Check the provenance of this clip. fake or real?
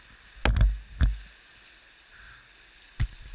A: real